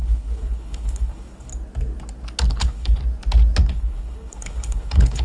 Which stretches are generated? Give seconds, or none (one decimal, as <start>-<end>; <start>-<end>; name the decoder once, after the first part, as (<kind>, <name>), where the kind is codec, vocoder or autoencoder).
0.0-1.5 (codec, HILCodec); 2.5-3.0; 3.7-5.2